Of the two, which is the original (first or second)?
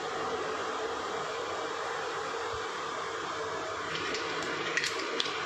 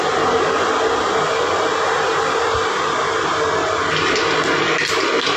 second